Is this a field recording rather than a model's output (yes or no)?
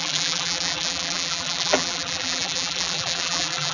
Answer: no